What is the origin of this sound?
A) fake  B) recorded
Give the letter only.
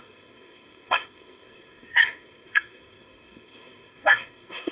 A